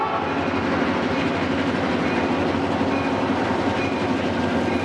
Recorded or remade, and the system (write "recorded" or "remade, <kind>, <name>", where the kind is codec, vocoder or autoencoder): recorded